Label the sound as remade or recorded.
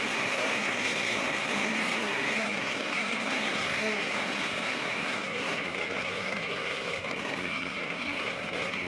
remade